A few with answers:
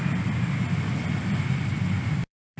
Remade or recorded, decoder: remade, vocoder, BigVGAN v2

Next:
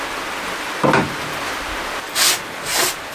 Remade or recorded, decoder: recorded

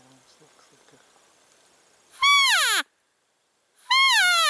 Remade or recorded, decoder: recorded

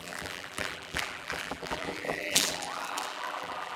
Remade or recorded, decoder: remade, vocoder, BigVGAN v2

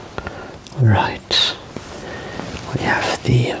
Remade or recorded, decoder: recorded